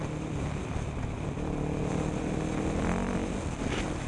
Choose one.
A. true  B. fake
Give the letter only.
A